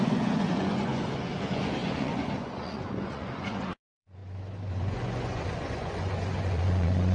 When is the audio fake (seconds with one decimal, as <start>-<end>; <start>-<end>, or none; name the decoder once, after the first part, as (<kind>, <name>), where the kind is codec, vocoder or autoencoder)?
0.0-4.2 (vocoder, Vocos); 4.7-7.1